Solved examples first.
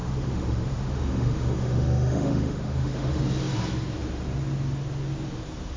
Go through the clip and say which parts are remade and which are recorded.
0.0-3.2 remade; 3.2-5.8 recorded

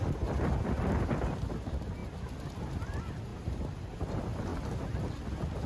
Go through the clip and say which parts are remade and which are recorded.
0.0-3.3 recorded; 3.3-4.1 remade; 4.1-5.7 recorded